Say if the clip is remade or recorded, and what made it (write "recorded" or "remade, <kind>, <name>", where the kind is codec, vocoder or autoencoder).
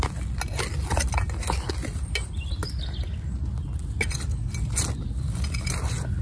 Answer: recorded